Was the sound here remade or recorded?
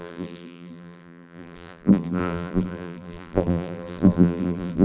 remade